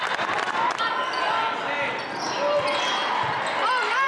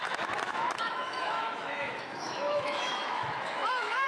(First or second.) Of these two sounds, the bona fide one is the first